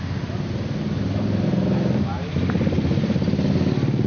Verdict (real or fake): real